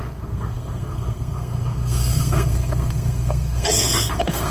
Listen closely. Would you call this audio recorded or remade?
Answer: remade